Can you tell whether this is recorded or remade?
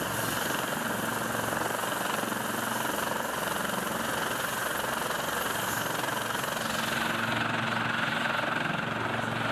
recorded